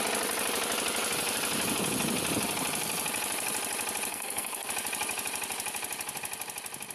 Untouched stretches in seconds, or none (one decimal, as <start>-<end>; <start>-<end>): 0.0-4.1; 4.7-6.9